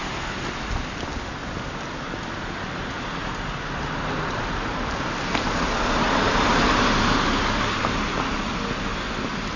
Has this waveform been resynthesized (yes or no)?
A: no